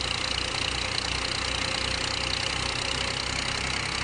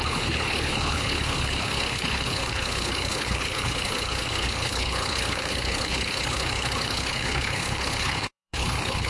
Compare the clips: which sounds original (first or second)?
first